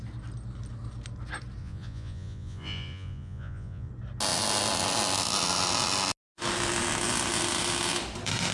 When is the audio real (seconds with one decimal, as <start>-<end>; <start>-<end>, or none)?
0.0-1.6; 3.9-8.5